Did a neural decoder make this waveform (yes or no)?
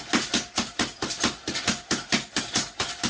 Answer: no